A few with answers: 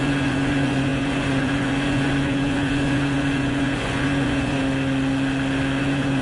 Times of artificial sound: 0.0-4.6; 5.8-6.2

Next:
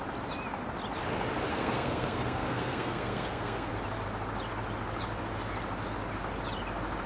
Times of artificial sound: 1.5-3.7